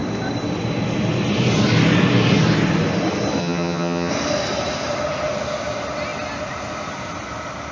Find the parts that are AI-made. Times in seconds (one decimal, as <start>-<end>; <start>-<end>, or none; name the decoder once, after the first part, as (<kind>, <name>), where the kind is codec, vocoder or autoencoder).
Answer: 3.4-4.1 (vocoder, HiFi-GAN)